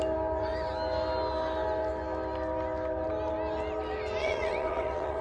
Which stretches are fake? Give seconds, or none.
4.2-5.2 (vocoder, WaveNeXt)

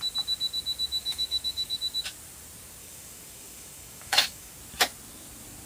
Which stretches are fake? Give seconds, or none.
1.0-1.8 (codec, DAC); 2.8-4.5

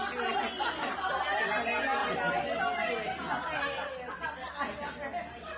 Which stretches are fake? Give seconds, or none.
none